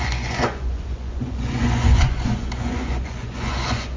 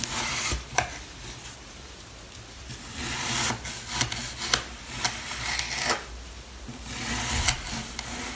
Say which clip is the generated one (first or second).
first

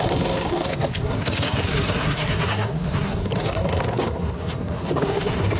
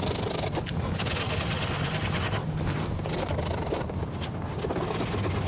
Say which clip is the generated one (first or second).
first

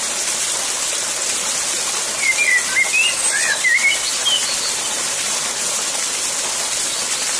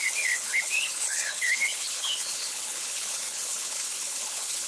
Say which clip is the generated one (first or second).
second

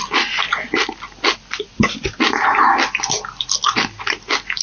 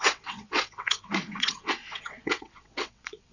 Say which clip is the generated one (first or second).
second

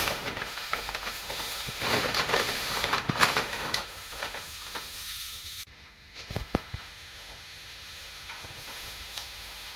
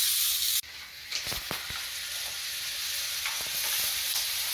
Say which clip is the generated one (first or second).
first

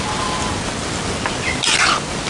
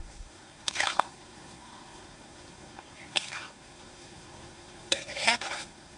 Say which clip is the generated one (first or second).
second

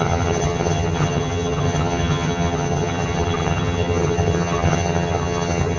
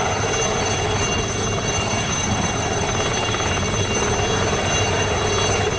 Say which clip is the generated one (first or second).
first